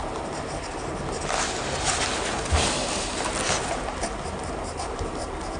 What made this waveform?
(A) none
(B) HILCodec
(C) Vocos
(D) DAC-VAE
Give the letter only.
A